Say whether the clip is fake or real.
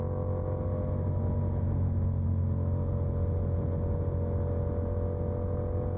real